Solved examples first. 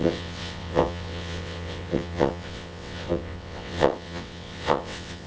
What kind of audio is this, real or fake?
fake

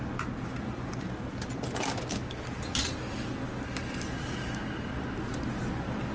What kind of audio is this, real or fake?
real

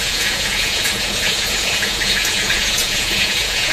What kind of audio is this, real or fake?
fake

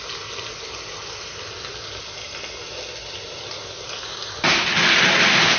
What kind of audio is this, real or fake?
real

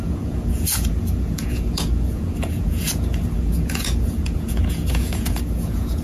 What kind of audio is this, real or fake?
fake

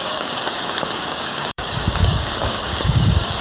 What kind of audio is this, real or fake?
fake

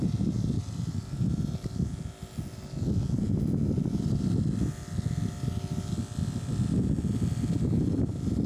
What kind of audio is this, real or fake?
real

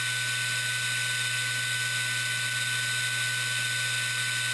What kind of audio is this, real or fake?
real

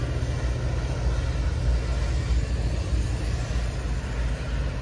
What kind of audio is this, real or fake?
real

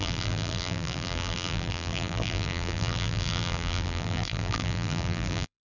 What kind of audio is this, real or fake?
fake